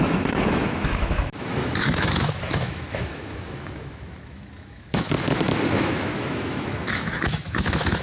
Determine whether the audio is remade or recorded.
remade